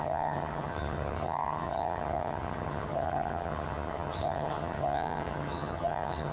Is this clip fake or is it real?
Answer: fake